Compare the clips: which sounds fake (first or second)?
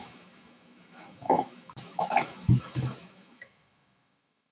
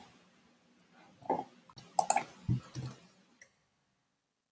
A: first